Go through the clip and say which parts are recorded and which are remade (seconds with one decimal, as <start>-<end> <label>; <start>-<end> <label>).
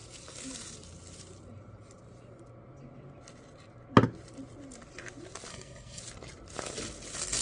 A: 0.0-5.5 recorded; 5.5-6.0 remade; 6.0-7.4 recorded